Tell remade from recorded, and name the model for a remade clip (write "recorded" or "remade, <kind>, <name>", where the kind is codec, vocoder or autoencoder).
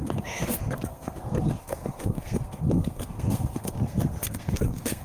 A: remade, codec, SNAC